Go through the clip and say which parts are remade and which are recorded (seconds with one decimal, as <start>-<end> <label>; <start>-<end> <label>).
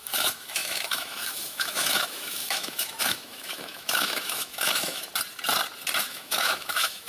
0.0-5.1 remade; 5.1-6.0 recorded; 6.0-7.1 remade